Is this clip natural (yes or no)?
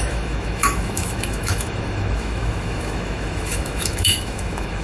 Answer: no